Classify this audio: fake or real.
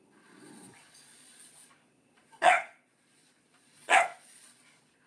fake